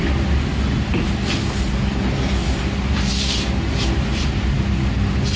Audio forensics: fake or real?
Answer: real